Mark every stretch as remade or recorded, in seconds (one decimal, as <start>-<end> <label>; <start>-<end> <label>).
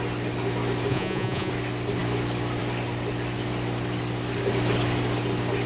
0.0-0.9 recorded; 0.9-1.5 remade; 1.5-5.7 recorded